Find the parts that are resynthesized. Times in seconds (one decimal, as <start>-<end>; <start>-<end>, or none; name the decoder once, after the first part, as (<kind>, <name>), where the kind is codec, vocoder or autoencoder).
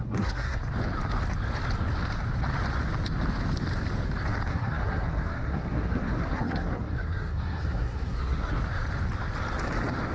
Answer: 0.0-0.6 (codec, SNAC); 4.5-8.5